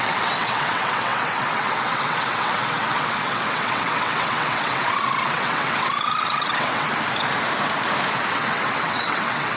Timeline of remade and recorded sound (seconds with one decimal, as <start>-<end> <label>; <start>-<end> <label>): 0.0-6.9 remade; 6.9-8.3 recorded; 8.3-9.6 remade